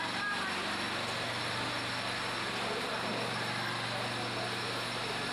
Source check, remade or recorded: recorded